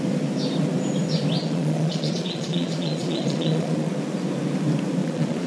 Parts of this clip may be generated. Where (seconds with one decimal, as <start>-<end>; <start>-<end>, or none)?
1.4-3.9; 5.0-5.5